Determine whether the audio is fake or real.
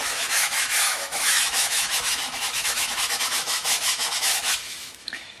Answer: fake